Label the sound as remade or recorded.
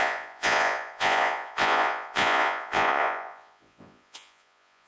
remade